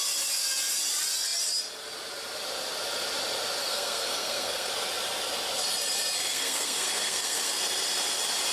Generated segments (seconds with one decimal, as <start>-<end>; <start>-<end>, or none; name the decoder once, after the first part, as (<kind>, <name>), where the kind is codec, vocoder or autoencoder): 3.6-4.7 (codec, SNAC); 6.3-7.5